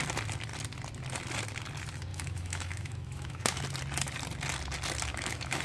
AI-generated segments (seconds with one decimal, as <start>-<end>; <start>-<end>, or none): 2.1-3.6; 5.1-5.6